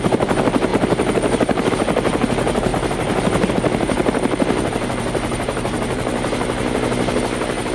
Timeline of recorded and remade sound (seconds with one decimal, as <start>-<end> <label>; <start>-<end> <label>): 0.0-4.0 remade; 4.0-4.7 recorded; 4.7-6.1 remade; 6.1-7.2 recorded; 7.2-7.7 remade